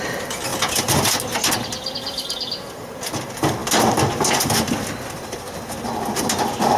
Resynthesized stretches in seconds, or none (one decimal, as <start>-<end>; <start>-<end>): none

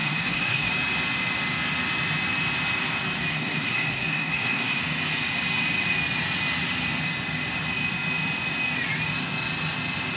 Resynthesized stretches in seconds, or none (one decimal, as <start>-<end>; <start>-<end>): 0.0-0.7; 3.3-4.8

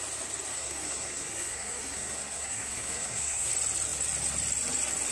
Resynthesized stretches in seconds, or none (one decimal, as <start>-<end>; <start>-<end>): 0.5-3.5